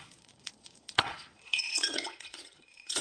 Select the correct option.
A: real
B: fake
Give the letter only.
B